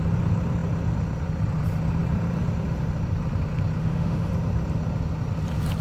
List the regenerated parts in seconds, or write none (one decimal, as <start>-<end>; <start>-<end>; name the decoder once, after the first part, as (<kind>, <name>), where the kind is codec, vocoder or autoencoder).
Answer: 3.8-4.3 (autoencoder, DAC-VAE)